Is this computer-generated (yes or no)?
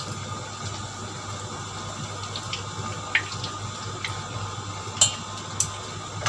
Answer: no